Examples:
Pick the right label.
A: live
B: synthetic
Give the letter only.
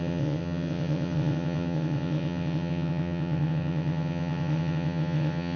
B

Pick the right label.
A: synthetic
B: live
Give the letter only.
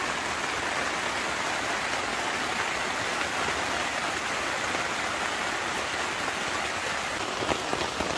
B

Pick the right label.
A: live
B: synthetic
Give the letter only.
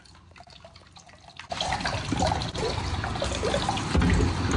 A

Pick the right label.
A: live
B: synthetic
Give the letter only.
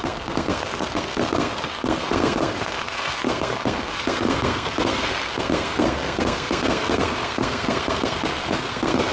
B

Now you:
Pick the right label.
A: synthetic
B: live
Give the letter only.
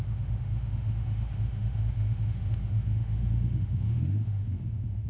A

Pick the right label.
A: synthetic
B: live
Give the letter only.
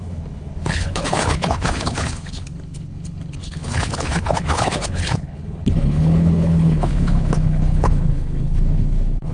A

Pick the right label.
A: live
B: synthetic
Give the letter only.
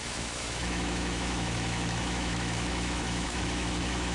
B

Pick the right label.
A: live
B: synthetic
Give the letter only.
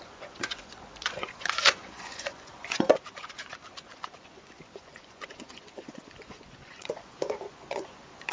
B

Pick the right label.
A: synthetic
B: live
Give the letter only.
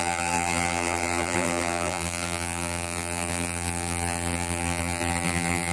A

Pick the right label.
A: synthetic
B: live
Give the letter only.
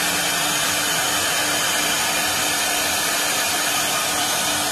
B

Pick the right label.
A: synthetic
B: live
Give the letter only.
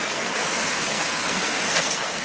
A